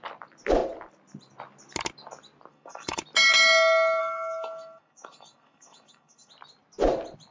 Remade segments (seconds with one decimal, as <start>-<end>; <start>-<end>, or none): 2.5-3.0; 4.0-6.3